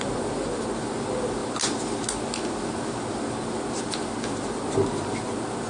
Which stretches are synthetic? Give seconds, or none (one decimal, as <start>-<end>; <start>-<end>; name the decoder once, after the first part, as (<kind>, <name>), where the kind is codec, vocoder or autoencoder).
none